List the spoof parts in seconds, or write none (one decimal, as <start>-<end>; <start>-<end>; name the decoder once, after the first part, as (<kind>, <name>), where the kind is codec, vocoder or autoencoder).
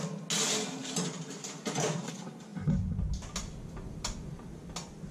0.8-2.1 (vocoder, BigVGAN v2)